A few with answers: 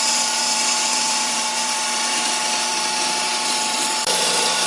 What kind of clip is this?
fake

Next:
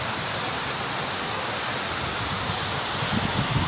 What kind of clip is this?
real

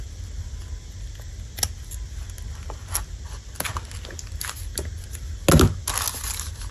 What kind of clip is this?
real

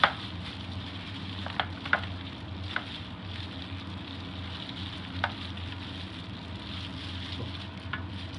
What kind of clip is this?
real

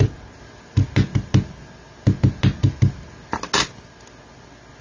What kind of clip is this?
real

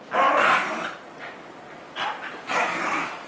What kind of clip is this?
real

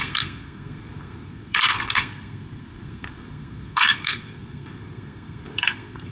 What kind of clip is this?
fake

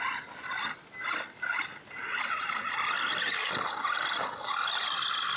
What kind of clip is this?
real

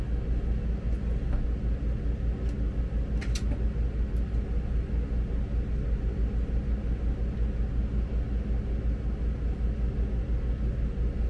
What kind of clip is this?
real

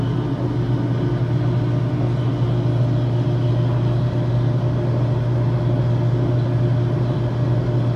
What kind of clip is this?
real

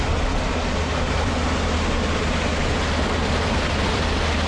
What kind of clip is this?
real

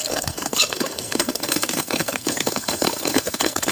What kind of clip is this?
fake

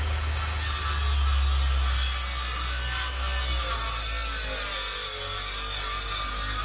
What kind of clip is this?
real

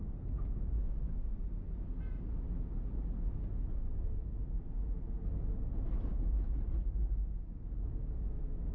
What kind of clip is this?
real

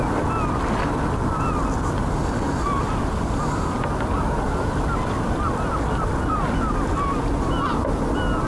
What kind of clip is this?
real